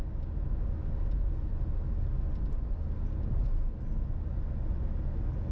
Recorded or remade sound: recorded